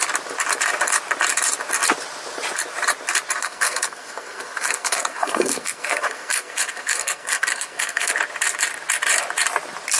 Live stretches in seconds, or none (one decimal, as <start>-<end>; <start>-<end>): 0.0-3.4; 8.1-10.0